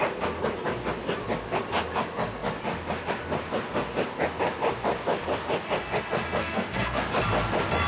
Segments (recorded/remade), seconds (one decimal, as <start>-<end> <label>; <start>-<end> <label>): 0.0-6.4 recorded; 6.4-7.0 remade; 7.0-7.9 recorded